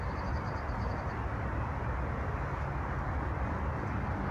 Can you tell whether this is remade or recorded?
recorded